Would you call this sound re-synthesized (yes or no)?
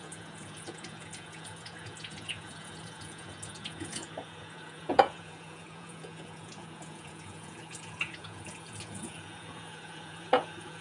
yes